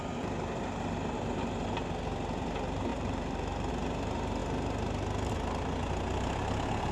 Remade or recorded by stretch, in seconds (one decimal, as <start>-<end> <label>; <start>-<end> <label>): 0.0-2.9 recorded; 2.9-3.7 remade; 3.7-6.9 recorded